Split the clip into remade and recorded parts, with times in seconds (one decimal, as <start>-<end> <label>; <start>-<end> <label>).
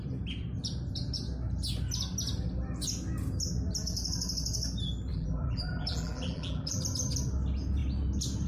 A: 0.0-5.1 recorded; 5.1-6.8 remade; 6.8-8.5 recorded